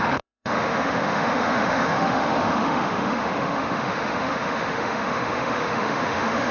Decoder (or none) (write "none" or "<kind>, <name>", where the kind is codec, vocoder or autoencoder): autoencoder, DAC-VAE